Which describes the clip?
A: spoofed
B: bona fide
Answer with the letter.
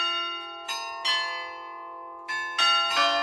B